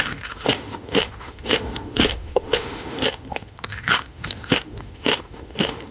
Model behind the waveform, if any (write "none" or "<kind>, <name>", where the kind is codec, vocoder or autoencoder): autoencoder, DAC-VAE